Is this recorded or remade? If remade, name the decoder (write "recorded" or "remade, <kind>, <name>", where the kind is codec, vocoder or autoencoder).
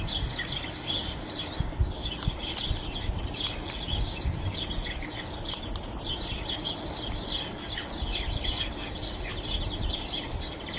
recorded